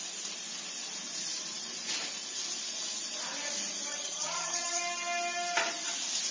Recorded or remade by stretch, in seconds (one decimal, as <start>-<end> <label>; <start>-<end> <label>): 0.0-3.9 recorded; 3.9-4.8 remade; 4.8-6.3 recorded